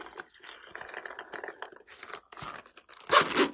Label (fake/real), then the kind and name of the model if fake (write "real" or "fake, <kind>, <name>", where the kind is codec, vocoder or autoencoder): real